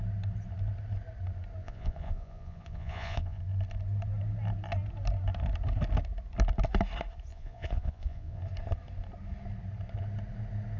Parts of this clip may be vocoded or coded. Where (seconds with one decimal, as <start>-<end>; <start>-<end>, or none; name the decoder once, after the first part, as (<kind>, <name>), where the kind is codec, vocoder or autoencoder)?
1.6-3.4 (vocoder, Vocos); 7.3-8.4